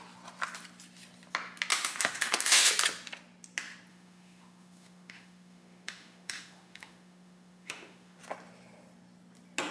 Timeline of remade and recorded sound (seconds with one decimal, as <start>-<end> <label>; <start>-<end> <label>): 0.0-1.7 recorded; 1.7-2.7 remade; 2.7-3.9 recorded; 3.9-8.2 remade; 8.2-9.7 recorded